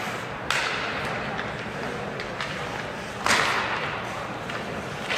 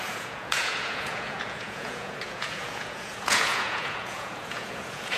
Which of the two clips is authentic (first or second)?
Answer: first